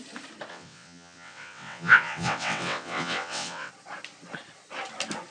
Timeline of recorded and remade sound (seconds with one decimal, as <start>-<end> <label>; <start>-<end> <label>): 0.0-0.5 recorded; 0.5-3.7 remade; 3.7-5.3 recorded